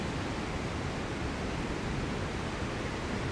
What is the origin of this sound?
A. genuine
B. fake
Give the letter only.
A